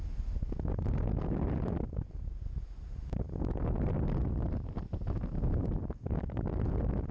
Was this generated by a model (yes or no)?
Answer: no